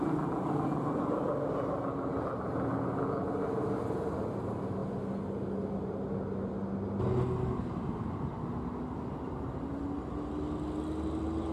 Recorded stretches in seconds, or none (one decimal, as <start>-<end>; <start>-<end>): 0.0-11.5